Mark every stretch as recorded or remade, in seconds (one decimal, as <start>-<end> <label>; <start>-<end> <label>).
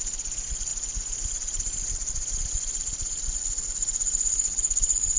0.0-2.9 recorded; 2.9-4.2 remade; 4.2-5.2 recorded